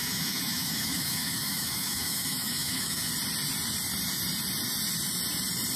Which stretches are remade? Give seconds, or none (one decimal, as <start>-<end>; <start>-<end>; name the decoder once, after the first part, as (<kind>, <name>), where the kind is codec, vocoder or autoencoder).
0.0-3.1 (autoencoder, DAC-VAE)